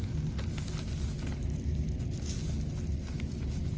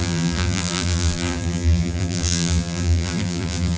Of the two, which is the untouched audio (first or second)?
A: first